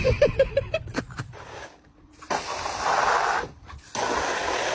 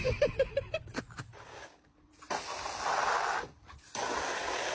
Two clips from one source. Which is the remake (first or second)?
first